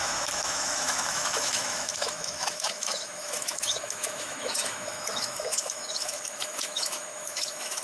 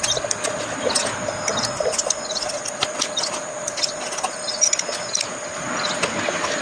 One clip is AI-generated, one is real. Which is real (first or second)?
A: second